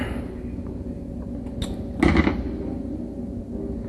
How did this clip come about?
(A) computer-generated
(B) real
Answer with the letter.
B